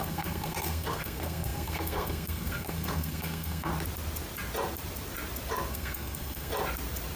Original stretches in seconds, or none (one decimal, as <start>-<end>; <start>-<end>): 3.7-5.7; 6.5-7.2